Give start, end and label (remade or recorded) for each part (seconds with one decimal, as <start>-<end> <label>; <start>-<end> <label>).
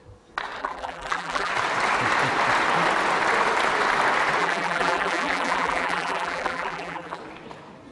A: 0.0-0.6 recorded; 0.6-1.5 remade; 1.5-4.4 recorded; 4.4-7.2 remade; 7.2-7.9 recorded